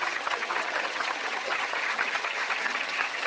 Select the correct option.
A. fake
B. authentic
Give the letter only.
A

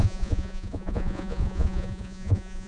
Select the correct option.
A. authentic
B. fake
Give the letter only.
B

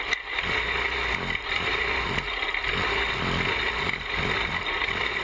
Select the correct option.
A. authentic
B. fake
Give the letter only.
A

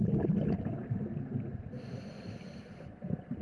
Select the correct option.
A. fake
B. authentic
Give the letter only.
B